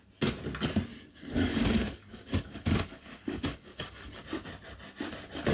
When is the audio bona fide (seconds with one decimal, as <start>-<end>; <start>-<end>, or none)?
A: 0.0-0.9; 4.2-5.5